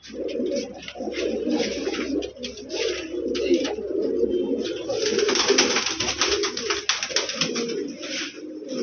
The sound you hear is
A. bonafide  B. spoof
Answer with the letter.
A